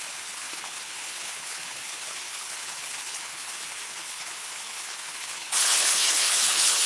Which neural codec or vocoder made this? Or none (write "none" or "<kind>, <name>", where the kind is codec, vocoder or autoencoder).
codec, HILCodec